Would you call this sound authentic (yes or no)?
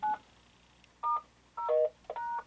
yes